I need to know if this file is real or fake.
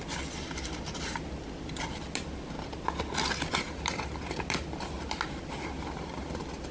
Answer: real